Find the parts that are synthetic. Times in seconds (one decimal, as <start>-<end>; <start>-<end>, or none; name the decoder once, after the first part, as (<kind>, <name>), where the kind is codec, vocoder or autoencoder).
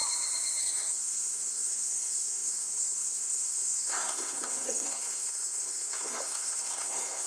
0.6-7.3 (codec, SNAC)